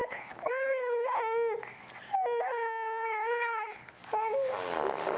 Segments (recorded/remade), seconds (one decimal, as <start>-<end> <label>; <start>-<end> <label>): 0.0-1.2 remade; 1.2-2.4 recorded; 2.4-4.0 remade; 4.0-5.2 recorded